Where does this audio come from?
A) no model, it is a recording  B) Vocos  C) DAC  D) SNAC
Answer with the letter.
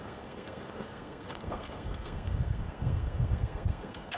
D